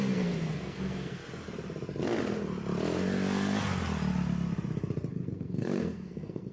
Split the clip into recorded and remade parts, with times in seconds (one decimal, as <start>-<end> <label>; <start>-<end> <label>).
0.0-1.2 remade; 1.2-5.1 recorded; 5.1-6.5 remade